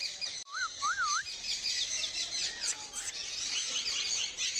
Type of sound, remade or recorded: recorded